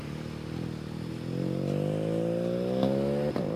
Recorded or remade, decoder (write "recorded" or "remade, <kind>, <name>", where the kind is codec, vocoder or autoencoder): recorded